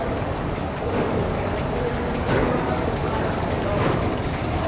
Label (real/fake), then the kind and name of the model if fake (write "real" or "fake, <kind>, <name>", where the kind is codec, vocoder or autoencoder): fake, codec, DAC